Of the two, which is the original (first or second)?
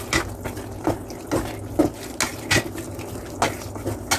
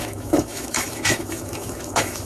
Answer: first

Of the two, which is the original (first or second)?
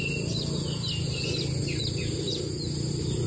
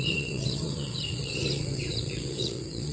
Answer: first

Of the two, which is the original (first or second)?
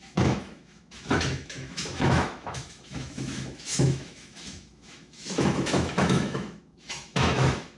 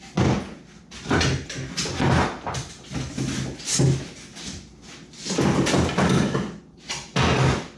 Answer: second